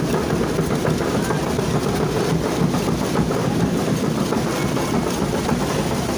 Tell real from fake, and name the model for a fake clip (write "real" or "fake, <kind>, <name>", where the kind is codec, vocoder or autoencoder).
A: real